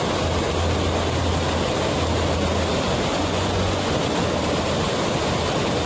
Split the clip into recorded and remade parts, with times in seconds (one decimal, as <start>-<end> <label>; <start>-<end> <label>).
0.0-3.1 recorded; 3.1-3.9 remade; 3.9-5.9 recorded

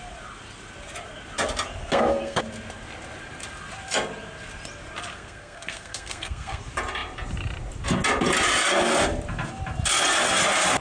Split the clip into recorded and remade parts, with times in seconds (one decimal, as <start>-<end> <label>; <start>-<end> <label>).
0.0-1.8 recorded; 1.8-2.4 remade; 2.4-5.1 recorded; 5.1-6.6 remade; 6.6-10.8 recorded

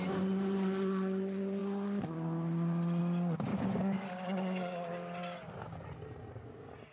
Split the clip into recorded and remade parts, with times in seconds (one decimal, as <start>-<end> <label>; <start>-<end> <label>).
0.0-3.5 recorded; 3.5-4.9 remade; 4.9-6.9 recorded